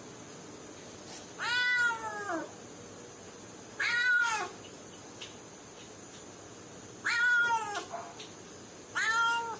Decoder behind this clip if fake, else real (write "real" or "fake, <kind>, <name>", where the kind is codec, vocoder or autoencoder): real